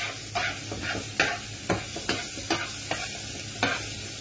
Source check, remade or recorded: recorded